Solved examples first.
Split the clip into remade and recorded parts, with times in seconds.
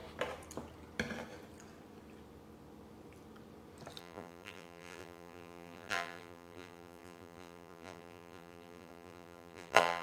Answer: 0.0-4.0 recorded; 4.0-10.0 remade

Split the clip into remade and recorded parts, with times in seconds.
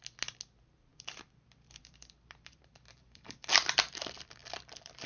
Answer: 0.0-0.9 recorded; 0.9-4.0 remade; 4.0-4.4 recorded; 4.4-5.1 remade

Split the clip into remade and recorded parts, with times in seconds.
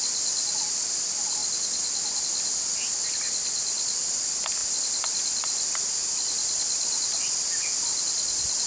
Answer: 0.0-8.7 recorded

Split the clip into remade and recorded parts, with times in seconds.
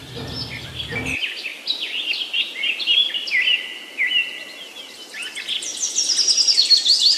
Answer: 0.0-1.5 recorded; 1.5-3.1 remade; 3.1-5.7 recorded; 5.7-6.6 remade; 6.6-7.2 recorded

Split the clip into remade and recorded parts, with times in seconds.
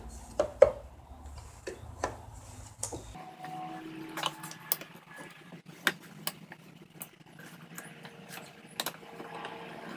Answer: 0.0-10.0 recorded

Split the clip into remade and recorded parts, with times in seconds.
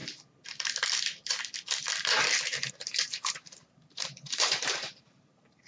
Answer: 0.0-2.7 recorded; 2.7-5.7 remade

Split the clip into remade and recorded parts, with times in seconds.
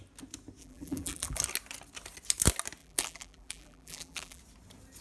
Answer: 0.0-0.6 recorded; 0.6-1.4 remade; 1.4-2.8 recorded; 2.8-4.4 remade; 4.4-5.0 recorded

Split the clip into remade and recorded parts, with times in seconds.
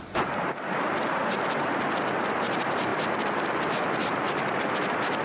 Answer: 0.0-1.2 remade; 1.2-2.1 recorded; 2.1-5.2 remade